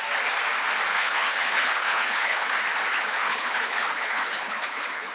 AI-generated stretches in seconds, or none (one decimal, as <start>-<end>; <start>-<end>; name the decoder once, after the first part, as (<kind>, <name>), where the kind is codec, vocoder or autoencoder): 0.9-2.5 (codec, HILCodec); 2.9-5.1